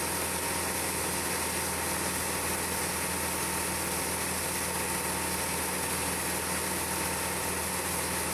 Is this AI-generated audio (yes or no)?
no